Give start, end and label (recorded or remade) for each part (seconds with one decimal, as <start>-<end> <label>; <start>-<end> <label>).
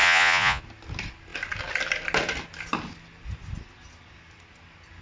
0.0-0.6 remade; 0.6-5.0 recorded